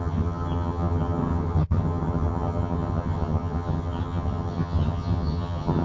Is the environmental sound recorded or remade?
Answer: remade